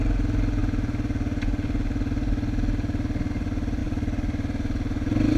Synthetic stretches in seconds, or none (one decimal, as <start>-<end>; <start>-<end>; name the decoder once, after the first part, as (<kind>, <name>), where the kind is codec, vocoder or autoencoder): 3.8-5.4 (vocoder, BigVGAN v2)